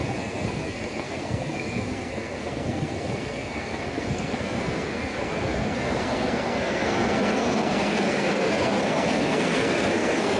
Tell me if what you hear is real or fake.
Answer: fake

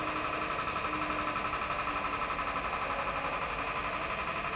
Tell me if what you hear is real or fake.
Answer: real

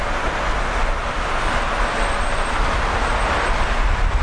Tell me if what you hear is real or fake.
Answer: real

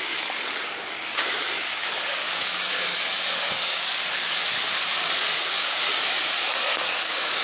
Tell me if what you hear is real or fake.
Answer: fake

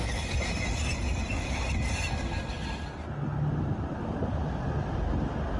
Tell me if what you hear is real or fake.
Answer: real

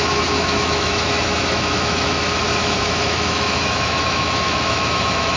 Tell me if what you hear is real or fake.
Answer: fake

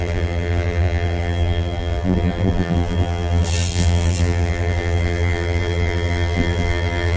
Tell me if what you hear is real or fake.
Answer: fake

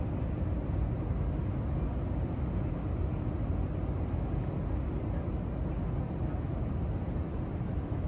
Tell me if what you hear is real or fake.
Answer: real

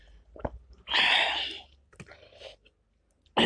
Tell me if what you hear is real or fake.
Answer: real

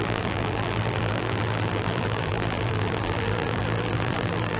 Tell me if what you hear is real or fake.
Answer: fake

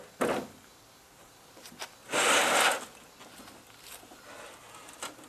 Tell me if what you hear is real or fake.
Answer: real